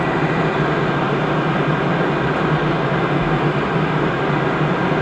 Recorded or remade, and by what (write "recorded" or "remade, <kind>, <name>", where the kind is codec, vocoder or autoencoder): recorded